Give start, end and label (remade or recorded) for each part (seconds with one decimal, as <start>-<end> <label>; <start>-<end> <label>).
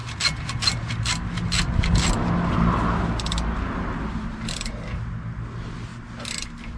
0.0-6.8 recorded